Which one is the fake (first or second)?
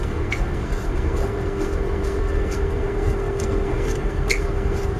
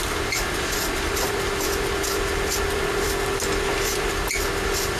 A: first